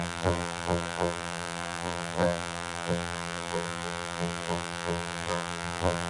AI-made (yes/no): yes